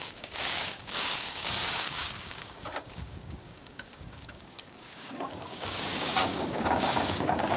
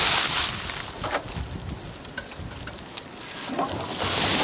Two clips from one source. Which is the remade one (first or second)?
first